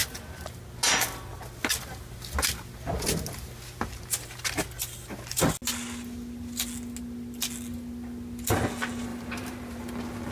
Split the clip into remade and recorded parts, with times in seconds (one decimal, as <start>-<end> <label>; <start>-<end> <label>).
0.0-9.1 recorded; 9.1-9.8 remade; 9.8-10.3 recorded